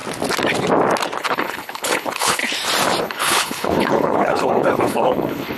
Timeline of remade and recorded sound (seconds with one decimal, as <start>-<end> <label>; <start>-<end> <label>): 0.0-1.2 recorded; 1.2-2.4 remade; 2.4-3.0 recorded; 3.0-5.6 remade